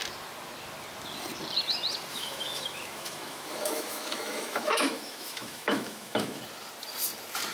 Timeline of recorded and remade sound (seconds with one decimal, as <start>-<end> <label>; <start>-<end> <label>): 0.0-2.1 recorded; 2.1-6.4 remade; 6.4-7.5 recorded